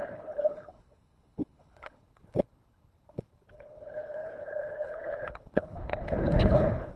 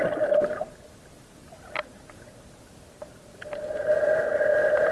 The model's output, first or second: first